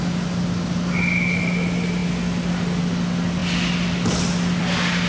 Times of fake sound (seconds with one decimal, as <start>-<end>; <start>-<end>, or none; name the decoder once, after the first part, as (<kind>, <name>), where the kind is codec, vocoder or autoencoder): none